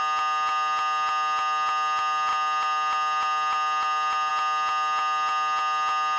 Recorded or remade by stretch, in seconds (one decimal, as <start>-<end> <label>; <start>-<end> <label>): 0.0-6.2 recorded